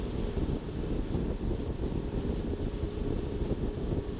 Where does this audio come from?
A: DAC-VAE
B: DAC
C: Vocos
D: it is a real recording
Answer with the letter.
D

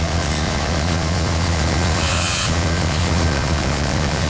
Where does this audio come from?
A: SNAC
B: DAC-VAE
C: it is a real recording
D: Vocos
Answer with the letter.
D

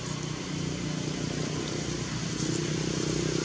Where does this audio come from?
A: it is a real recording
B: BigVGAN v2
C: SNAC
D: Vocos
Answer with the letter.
A